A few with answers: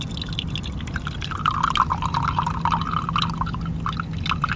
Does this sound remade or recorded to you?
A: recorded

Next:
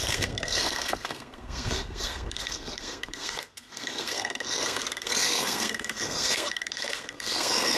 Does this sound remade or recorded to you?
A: remade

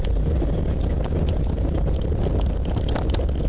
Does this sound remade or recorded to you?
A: recorded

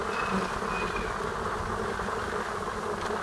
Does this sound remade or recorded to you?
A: recorded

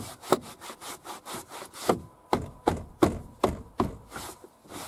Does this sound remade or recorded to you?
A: recorded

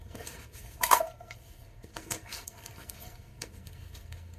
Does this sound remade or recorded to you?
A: remade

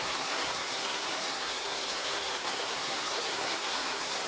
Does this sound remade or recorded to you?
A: remade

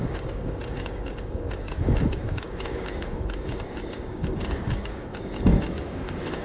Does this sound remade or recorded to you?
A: remade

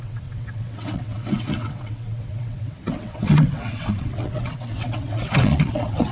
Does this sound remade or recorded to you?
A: remade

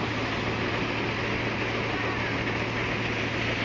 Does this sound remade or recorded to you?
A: recorded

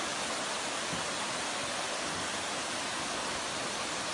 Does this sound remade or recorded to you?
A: recorded